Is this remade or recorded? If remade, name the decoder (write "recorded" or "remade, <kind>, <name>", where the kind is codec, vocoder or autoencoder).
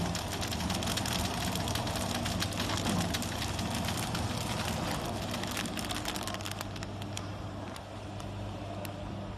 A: recorded